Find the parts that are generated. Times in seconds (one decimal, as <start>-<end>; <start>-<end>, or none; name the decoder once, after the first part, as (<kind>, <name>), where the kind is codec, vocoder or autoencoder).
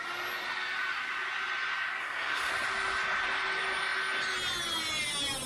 2.0-2.5 (codec, SNAC)